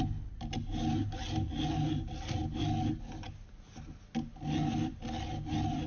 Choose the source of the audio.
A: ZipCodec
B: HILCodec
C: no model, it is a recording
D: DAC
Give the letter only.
C